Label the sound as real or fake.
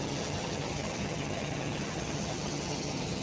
fake